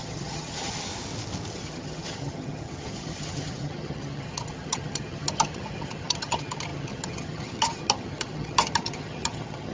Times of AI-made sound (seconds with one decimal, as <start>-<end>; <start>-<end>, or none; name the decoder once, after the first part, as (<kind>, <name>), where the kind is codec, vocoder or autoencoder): 0.0-0.9 (vocoder, HiFi-GAN); 1.5-9.7